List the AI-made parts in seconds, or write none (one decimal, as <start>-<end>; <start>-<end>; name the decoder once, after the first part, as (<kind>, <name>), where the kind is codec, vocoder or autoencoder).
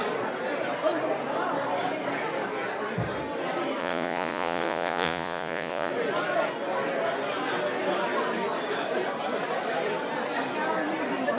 3.8-5.9 (vocoder, Vocos)